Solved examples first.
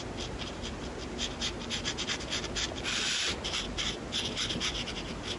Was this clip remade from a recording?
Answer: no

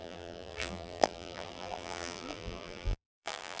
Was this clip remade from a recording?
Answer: yes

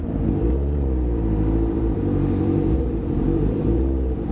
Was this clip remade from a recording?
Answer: yes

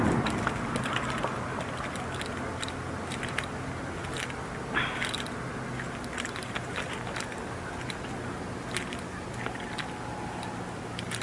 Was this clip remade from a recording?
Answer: no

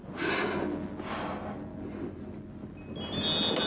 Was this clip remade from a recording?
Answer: no